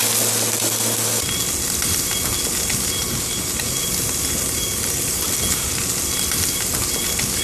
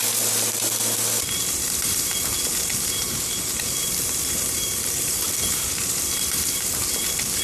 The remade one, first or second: second